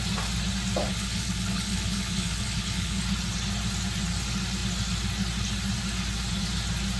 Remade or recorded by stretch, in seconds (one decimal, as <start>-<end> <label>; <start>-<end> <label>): 0.0-0.9 recorded; 0.9-3.0 remade; 3.0-7.0 recorded